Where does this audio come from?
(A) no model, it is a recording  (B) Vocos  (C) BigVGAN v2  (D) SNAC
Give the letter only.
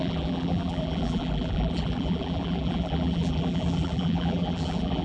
C